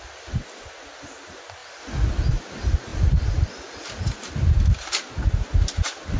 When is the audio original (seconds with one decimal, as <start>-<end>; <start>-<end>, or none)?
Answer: 0.0-6.2